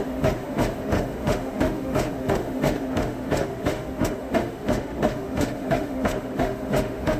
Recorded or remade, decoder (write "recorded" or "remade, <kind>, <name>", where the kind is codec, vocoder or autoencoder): remade, autoencoder, DAC-VAE